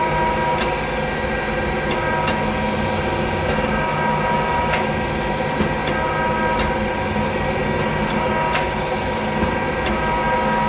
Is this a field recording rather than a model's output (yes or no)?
yes